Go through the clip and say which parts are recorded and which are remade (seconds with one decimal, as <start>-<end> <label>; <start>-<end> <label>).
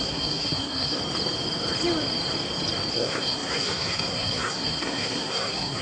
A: 0.0-1.0 remade; 1.0-2.9 recorded; 2.9-5.8 remade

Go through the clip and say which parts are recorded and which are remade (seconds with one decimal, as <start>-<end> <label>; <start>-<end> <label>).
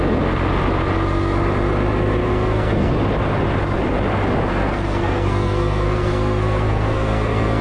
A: 0.0-2.2 recorded; 2.2-2.9 remade; 2.9-4.5 recorded; 4.5-7.6 remade